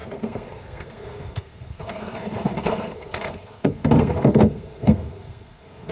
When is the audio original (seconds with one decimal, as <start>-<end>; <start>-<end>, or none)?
none